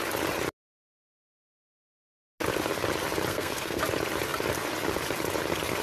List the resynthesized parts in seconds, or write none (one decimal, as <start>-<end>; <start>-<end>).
3.3-3.8